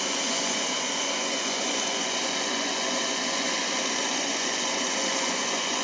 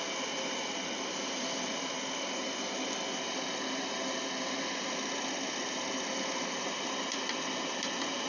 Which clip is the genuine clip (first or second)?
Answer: second